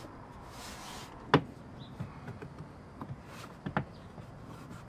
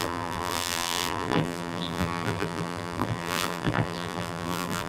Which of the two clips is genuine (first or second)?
first